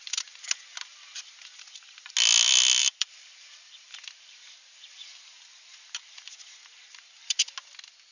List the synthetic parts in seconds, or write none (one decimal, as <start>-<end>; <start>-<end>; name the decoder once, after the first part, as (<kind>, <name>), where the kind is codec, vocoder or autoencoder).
2.8-3.7 (vocoder, BigVGAN v2)